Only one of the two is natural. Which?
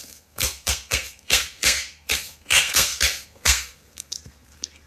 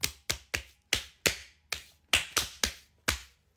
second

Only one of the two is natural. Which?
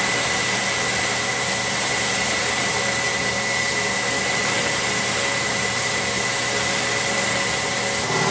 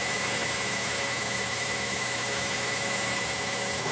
first